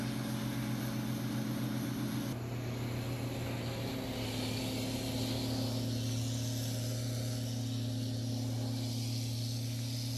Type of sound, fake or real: real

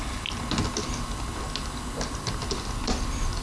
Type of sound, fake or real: real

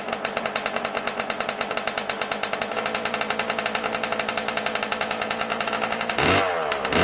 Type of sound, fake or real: real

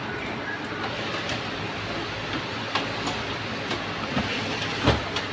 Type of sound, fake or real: real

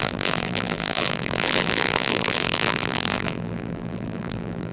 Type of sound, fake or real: fake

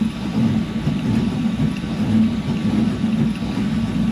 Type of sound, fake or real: real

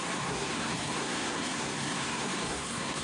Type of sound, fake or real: fake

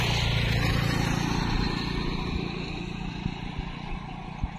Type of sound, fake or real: real